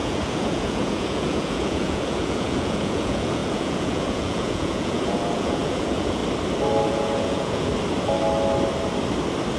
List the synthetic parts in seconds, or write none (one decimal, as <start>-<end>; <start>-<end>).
0.0-6.2; 6.9-7.7